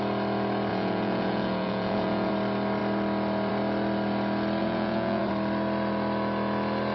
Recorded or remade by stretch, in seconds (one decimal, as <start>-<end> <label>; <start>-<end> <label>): 0.0-0.7 recorded; 0.7-2.3 remade; 2.3-4.6 recorded; 4.6-5.2 remade; 5.2-6.9 recorded